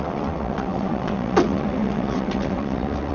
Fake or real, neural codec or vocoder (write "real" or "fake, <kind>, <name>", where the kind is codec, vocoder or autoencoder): fake, vocoder, WaveNeXt